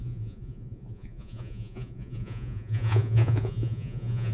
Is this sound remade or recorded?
remade